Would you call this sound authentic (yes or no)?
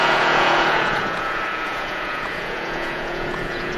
no